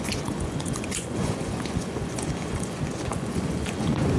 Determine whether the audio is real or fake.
fake